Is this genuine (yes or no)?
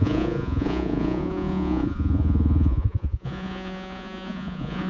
no